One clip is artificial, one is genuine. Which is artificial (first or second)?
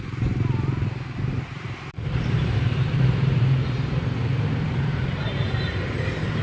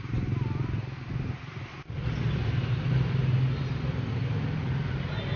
first